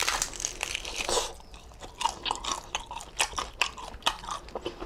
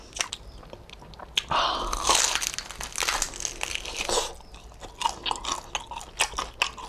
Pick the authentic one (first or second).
second